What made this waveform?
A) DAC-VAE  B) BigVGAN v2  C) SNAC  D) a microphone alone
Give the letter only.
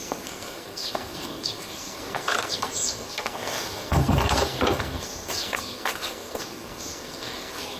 C